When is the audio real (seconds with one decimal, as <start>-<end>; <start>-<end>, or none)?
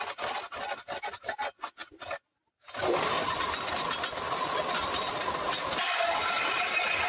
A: 0.0-7.1